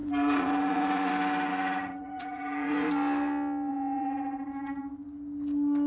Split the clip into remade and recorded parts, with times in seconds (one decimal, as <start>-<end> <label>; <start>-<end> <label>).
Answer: 0.0-1.1 remade; 1.1-1.5 recorded; 1.5-2.9 remade; 2.9-3.7 recorded; 3.7-4.8 remade; 4.8-5.9 recorded

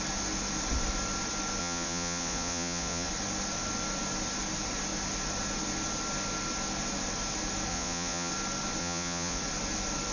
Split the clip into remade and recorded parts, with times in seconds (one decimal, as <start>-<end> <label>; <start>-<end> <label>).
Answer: 0.0-1.6 recorded; 1.6-3.1 remade; 3.1-7.7 recorded; 7.7-8.3 remade; 8.3-8.8 recorded; 8.8-9.4 remade; 9.4-10.1 recorded